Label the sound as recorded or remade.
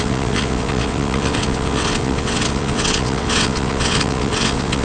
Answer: remade